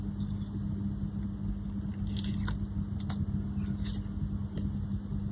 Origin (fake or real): real